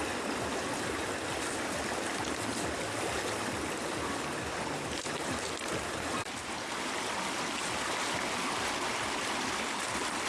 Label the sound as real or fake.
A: real